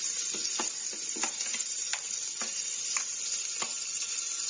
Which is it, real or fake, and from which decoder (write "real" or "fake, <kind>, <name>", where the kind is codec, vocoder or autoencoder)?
real